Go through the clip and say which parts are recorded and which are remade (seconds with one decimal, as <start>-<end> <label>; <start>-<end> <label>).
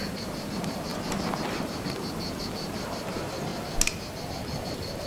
0.0-3.5 remade; 3.5-4.3 recorded; 4.3-5.1 remade